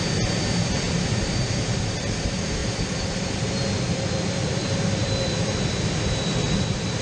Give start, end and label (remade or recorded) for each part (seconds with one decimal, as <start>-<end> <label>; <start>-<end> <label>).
0.0-0.5 recorded; 0.5-1.8 remade; 1.8-2.6 recorded; 2.6-7.0 remade